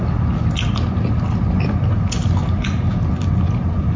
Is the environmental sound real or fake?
real